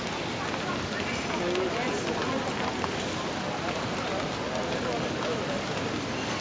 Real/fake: real